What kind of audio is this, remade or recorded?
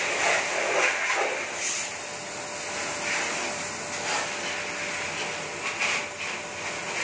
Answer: recorded